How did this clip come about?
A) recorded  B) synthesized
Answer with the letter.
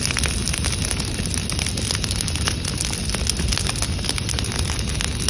A